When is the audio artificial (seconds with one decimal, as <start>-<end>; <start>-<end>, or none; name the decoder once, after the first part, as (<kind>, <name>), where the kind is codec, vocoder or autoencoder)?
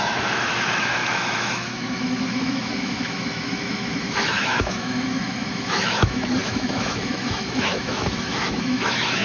0.0-9.2 (autoencoder, DAC-VAE)